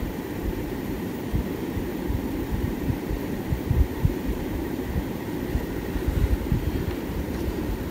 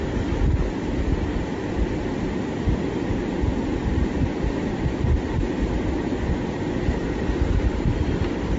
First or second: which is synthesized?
first